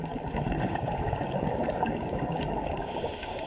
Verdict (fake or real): fake